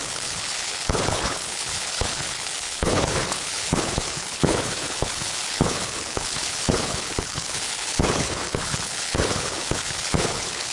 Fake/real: fake